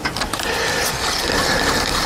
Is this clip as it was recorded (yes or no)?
yes